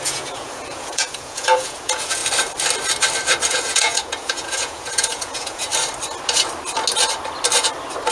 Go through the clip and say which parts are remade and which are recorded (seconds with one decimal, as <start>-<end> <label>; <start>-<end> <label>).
0.0-2.2 remade; 2.2-3.5 recorded; 3.5-5.7 remade; 5.7-8.1 recorded